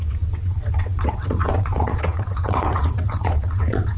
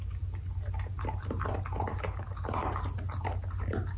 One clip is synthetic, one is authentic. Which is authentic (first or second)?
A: second